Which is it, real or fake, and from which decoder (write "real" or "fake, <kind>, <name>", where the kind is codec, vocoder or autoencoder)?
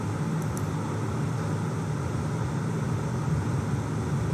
real